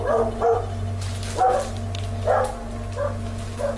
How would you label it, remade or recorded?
recorded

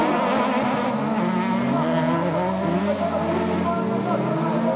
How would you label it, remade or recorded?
recorded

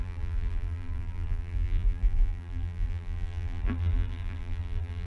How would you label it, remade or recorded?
remade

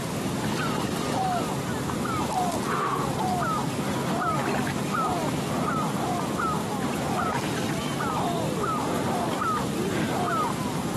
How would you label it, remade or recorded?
recorded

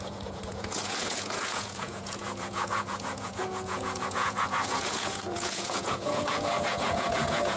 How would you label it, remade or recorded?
remade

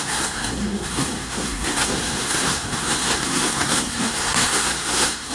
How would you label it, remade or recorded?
remade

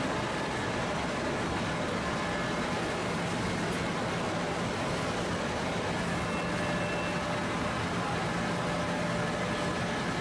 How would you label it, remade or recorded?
recorded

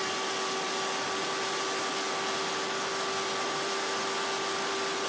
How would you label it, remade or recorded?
recorded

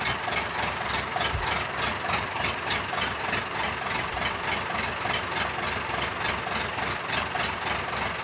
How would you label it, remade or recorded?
recorded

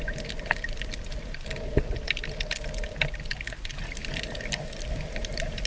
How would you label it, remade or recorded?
recorded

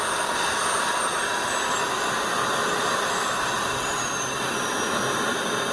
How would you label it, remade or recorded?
recorded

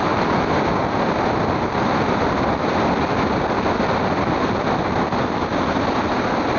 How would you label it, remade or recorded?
recorded